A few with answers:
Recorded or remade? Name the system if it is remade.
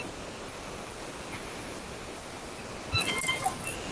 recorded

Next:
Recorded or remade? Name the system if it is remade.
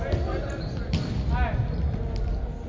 recorded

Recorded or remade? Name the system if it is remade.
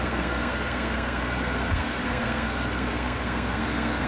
remade, codec, SNAC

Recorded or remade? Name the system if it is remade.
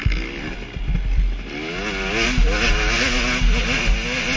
recorded